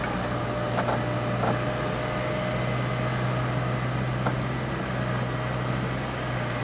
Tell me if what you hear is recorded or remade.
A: recorded